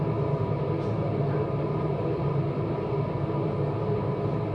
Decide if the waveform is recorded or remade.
recorded